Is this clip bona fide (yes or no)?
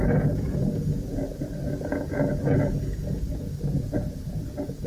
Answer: no